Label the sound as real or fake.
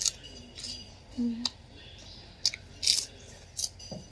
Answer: real